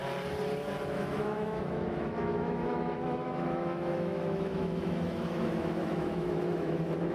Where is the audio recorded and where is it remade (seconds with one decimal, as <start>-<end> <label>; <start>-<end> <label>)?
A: 0.0-0.9 recorded; 0.9-7.1 remade